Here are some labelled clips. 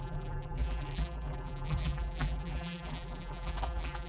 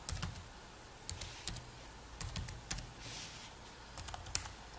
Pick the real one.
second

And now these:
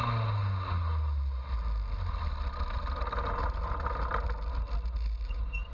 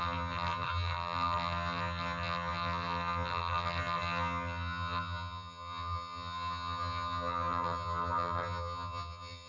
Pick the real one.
first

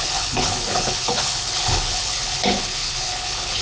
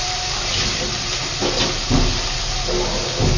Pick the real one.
second